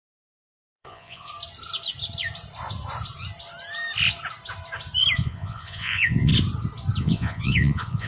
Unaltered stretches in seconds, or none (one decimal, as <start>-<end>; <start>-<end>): 1.3-5.2; 6.3-7.0